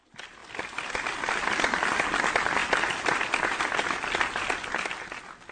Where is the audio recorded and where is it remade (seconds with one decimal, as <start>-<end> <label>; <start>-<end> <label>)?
0.0-5.5 recorded